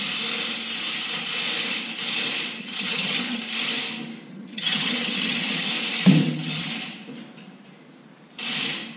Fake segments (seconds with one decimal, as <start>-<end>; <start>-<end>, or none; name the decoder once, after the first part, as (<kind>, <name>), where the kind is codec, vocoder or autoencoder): 2.6-3.4 (vocoder, HiFi-GAN); 4.3-5.7; 6.2-6.7